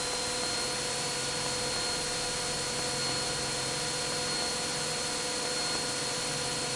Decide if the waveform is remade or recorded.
recorded